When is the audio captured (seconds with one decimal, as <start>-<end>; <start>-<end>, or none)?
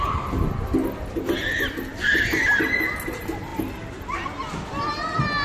0.0-5.4